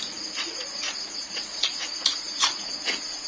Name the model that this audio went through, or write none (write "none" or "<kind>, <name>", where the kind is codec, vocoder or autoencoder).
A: vocoder, Vocos